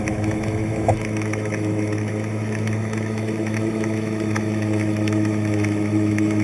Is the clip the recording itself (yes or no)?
no